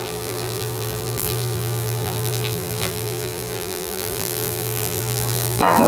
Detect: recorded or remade remade